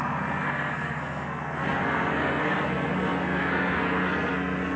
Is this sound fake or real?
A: fake